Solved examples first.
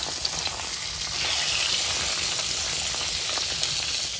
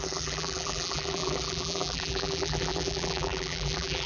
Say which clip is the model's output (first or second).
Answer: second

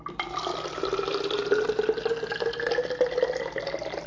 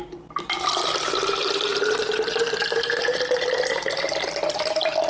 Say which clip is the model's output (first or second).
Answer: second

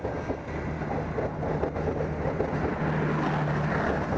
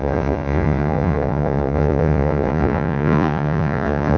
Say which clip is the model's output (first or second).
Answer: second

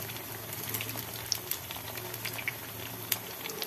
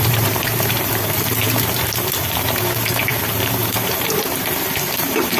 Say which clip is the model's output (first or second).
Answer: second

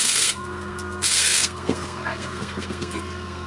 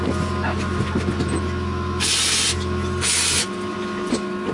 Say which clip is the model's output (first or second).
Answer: first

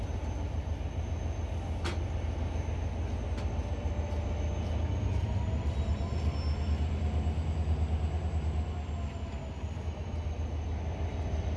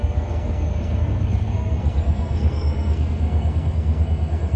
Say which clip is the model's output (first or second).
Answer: second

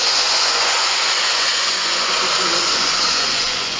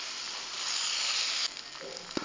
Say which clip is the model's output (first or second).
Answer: first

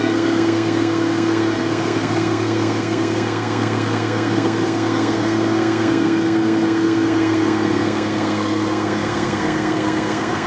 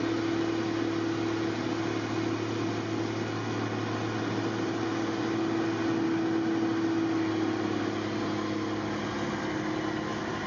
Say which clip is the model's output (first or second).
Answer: first